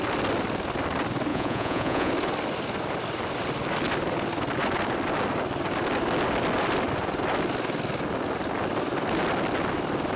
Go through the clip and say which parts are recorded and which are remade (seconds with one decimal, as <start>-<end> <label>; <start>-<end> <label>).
0.0-1.3 recorded; 1.3-2.1 remade; 2.1-10.2 recorded